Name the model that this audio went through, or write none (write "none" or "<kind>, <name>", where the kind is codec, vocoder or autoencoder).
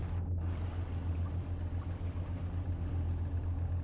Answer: none